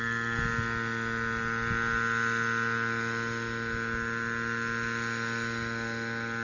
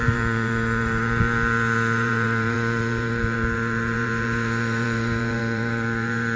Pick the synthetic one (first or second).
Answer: second